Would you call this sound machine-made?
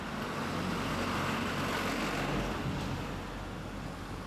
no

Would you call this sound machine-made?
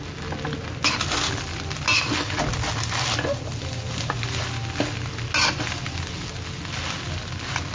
no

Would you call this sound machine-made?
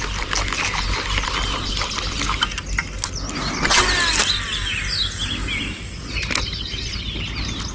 no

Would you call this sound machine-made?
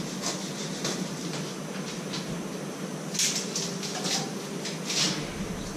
no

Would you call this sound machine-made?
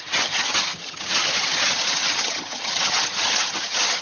yes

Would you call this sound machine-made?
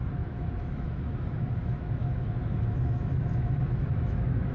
yes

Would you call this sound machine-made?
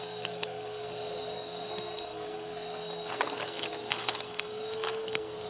yes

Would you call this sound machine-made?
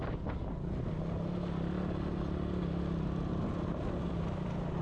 no